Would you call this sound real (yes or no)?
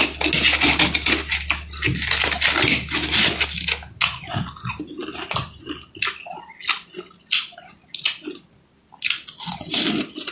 yes